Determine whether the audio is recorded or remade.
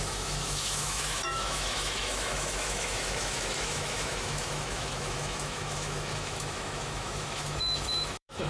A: remade